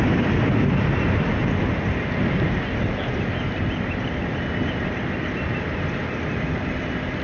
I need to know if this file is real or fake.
real